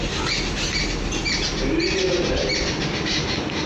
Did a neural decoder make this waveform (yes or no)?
no